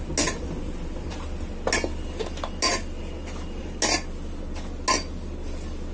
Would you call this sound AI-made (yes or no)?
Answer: no